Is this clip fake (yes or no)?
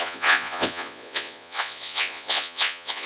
yes